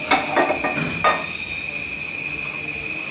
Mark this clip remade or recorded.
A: recorded